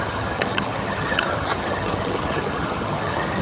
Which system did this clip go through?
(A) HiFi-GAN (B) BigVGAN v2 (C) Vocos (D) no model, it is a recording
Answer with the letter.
A